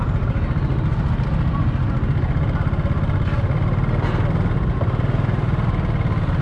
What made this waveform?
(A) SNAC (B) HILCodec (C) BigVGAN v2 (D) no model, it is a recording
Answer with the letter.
D